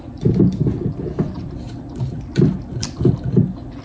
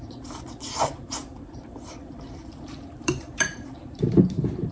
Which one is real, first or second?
first